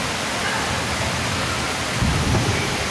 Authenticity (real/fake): real